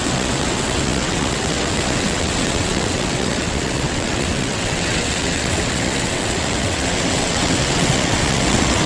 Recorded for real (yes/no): no